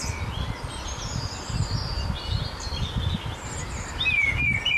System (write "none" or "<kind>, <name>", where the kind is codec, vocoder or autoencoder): none